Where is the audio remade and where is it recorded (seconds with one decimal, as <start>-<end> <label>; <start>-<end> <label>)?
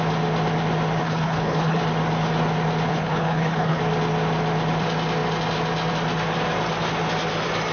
0.0-1.0 recorded; 1.0-1.8 remade; 1.8-2.9 recorded; 2.9-3.8 remade; 3.8-7.7 recorded